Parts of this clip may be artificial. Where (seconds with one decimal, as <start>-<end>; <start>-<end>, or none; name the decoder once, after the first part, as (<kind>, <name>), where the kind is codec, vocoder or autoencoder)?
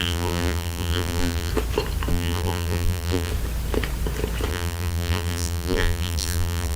0.0-1.5 (vocoder, BigVGAN v2); 2.1-3.3; 4.5-6.8